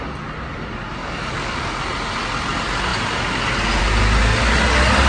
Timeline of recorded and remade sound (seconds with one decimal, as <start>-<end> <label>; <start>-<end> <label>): 0.0-1.0 recorded; 1.0-1.8 remade; 1.8-5.1 recorded